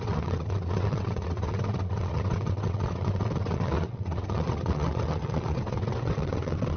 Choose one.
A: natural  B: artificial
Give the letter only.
B